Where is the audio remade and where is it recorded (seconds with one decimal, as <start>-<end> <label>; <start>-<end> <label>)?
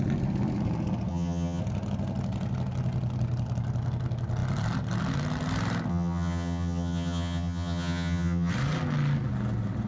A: 0.0-1.1 recorded; 1.1-1.6 remade; 1.6-5.9 recorded; 5.9-8.5 remade; 8.5-9.9 recorded